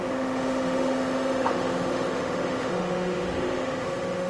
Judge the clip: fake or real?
fake